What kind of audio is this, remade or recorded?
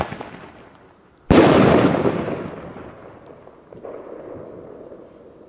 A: recorded